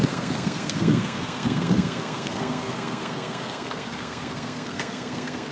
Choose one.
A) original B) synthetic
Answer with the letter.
B